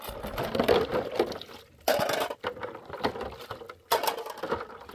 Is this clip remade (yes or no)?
no